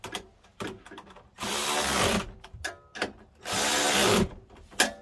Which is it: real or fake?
real